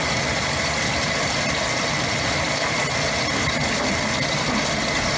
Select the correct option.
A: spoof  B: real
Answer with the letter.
B